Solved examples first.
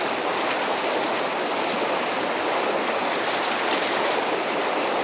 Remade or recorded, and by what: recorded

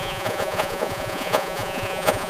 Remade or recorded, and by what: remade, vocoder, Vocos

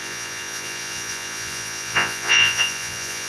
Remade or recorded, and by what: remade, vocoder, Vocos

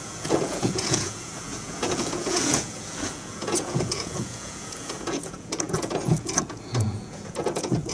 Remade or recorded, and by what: remade, vocoder, Vocos